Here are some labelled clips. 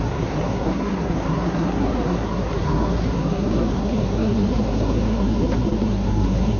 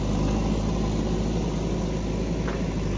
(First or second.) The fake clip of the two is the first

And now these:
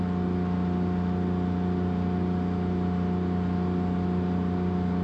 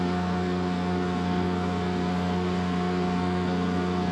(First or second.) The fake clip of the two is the second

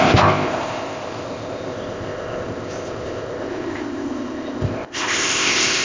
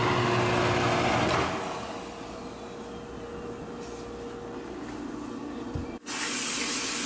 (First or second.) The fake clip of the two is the first